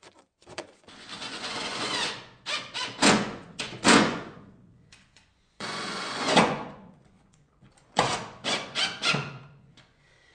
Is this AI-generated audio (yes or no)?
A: yes